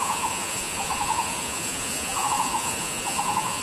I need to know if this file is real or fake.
fake